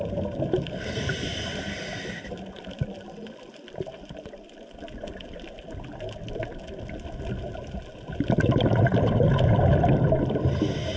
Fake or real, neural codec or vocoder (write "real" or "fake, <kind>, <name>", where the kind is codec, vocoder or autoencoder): real